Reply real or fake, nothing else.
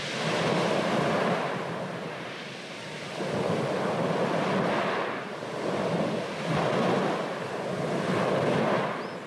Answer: real